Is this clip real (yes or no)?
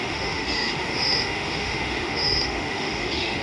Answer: no